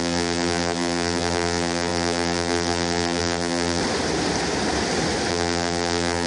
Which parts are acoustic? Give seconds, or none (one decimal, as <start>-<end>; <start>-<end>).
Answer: 3.8-5.3

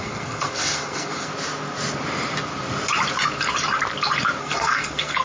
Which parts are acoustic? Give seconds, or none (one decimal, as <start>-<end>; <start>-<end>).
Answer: 1.3-4.4

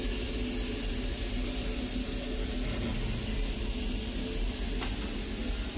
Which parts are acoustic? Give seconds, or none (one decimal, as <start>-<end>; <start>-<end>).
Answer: 0.0-5.8

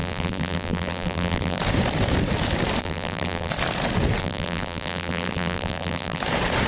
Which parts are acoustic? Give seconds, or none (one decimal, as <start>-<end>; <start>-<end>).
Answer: 1.6-2.8; 3.5-4.2; 6.2-6.7

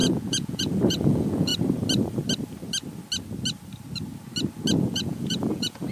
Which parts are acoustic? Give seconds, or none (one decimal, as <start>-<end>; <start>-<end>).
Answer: 1.5-4.8

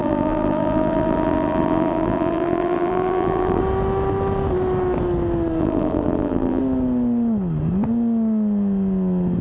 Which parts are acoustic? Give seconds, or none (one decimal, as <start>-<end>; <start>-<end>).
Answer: 3.6-5.6; 6.6-9.4

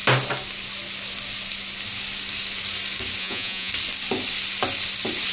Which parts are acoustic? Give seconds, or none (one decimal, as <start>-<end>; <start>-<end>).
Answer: 0.0-3.2; 3.7-5.3

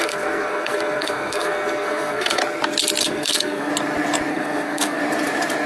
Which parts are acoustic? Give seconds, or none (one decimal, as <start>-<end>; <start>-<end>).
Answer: 2.4-3.0; 3.7-4.3; 5.0-5.7